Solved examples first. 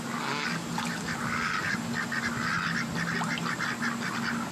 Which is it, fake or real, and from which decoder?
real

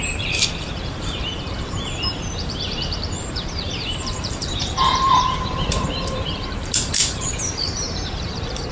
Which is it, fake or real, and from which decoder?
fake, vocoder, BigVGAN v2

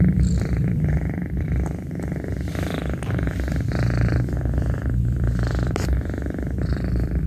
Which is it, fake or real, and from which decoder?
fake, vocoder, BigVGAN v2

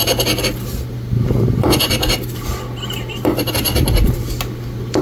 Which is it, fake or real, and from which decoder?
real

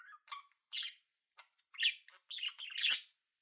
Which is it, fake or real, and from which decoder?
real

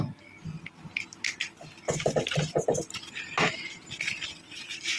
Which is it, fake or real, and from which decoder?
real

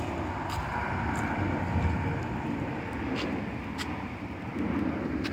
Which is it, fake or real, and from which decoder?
real